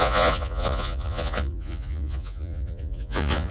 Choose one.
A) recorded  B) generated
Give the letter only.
B